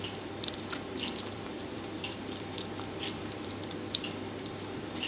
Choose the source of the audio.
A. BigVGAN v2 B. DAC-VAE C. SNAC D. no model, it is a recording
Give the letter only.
A